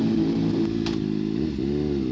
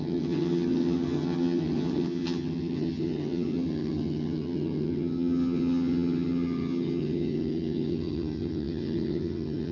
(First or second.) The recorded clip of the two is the first